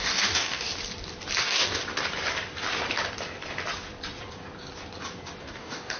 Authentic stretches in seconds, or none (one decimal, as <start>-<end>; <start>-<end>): 0.7-1.4; 1.8-5.4